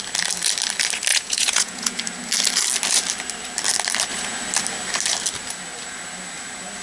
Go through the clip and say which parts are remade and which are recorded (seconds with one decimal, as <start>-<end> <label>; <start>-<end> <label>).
0.0-1.1 recorded; 1.1-2.0 remade; 2.0-6.8 recorded